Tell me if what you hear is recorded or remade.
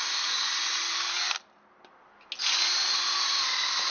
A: recorded